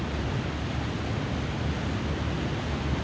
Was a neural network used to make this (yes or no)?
no